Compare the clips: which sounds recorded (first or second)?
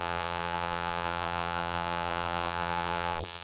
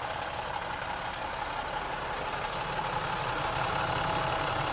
second